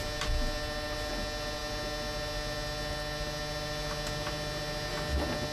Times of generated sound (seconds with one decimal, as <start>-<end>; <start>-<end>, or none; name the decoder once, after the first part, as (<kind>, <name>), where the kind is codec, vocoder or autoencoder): none